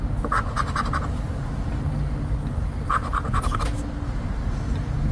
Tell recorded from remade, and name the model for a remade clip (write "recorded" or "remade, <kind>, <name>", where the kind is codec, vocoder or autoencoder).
recorded